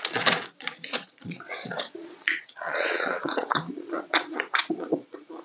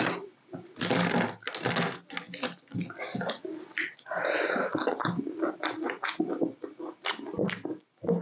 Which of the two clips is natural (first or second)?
second